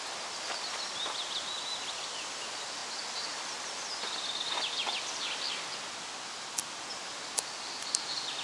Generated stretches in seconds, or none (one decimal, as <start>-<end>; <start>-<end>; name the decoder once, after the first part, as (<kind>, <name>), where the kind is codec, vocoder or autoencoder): none